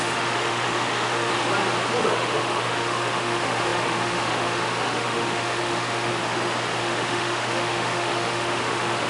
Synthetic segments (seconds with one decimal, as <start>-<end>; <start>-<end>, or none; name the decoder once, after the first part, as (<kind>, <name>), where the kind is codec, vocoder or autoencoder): 0.0-1.3 (autoencoder, DAC-VAE); 2.0-6.1; 6.8-9.1